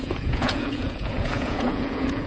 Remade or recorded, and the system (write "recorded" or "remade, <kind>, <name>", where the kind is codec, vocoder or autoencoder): remade, vocoder, Vocos